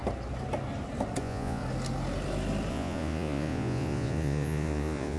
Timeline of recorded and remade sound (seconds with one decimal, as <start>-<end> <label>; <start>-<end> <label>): 0.0-1.2 recorded; 1.2-1.6 remade; 1.6-2.7 recorded; 2.7-5.2 remade